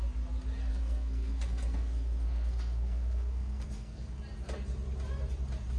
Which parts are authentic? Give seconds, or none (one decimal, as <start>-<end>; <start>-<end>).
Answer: 0.0-0.7; 4.2-5.8